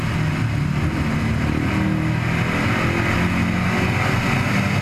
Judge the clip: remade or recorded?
recorded